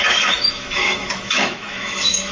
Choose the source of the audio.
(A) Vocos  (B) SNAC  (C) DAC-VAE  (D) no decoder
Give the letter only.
C